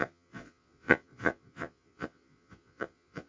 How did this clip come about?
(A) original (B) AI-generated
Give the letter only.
B